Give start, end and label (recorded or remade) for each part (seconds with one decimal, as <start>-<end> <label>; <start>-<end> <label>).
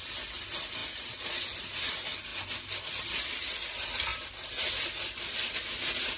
0.0-0.8 recorded; 0.8-1.9 remade; 1.9-4.1 recorded; 4.1-4.7 remade; 4.7-6.2 recorded